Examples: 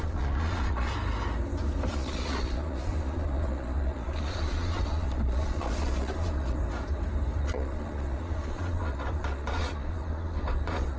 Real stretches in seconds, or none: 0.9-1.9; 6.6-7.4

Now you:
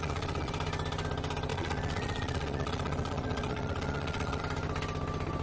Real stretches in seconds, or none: 0.5-1.5; 4.4-5.4

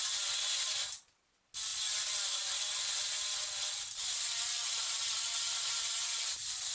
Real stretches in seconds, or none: 0.6-6.7

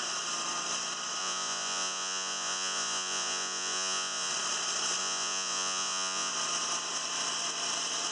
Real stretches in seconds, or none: 0.0-1.2; 4.3-5.0; 6.3-8.1

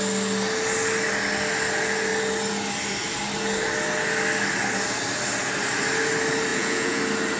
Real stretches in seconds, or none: 0.0-6.5; 7.0-7.4

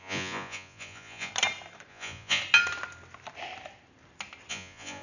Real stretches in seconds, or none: 1.3-1.9; 2.4-4.5

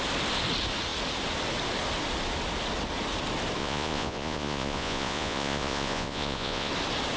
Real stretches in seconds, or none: 0.0-3.6; 6.7-7.2